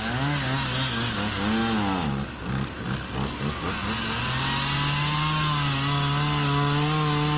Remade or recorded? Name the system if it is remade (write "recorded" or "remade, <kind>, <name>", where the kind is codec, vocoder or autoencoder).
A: recorded